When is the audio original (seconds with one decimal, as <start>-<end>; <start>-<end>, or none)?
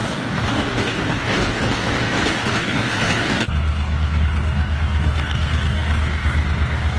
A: none